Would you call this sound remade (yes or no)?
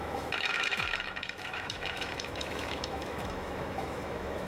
yes